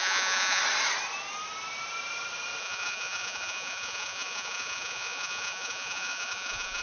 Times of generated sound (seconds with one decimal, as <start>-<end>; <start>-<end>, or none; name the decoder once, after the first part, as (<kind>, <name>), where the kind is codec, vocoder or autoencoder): 0.0-0.6 (vocoder, Vocos); 2.6-6.8